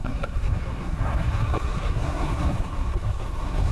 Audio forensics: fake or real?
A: fake